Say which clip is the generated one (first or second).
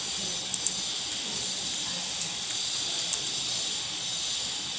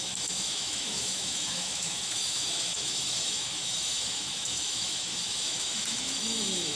second